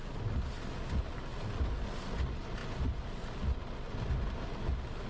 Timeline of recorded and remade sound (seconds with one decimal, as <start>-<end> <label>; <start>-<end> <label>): 0.0-0.6 remade; 0.6-5.1 recorded

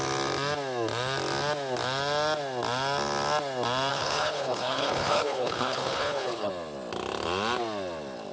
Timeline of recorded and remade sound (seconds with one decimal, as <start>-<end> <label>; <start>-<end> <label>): 0.0-3.9 recorded; 3.9-6.5 remade; 6.5-8.3 recorded

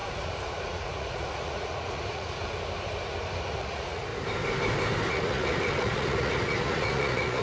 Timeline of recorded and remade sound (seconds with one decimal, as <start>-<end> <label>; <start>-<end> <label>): 0.0-2.4 remade; 2.4-3.6 recorded; 3.6-4.1 remade; 4.1-5.1 recorded; 5.1-7.4 remade

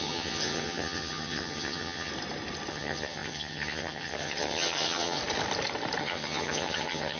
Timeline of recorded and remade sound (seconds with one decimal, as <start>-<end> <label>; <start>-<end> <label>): 0.0-2.1 remade; 2.1-2.7 recorded; 2.7-5.2 remade; 5.2-6.0 recorded; 6.0-7.2 remade

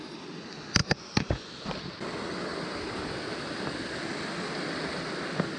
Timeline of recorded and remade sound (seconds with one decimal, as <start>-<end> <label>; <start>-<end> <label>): 0.0-0.8 recorded; 0.8-1.5 remade; 1.5-5.6 recorded

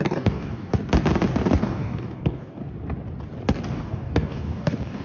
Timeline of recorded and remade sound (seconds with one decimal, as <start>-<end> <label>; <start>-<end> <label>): 0.0-0.7 remade; 0.7-1.6 recorded; 1.6-2.6 remade; 2.6-3.7 recorded; 3.7-5.0 remade